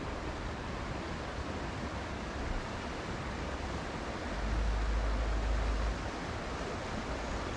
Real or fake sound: real